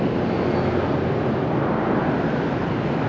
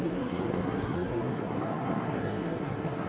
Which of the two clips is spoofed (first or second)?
second